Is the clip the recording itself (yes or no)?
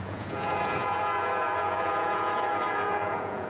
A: no